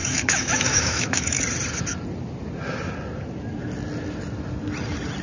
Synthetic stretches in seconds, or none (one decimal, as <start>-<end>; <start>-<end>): 0.0-1.4